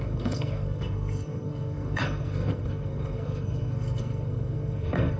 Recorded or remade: remade